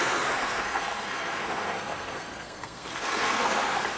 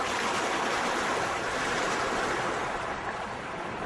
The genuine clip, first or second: second